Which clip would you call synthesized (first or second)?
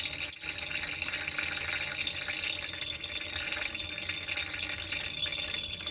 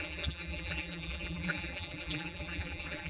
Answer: second